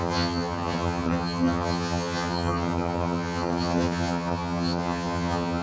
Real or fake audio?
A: fake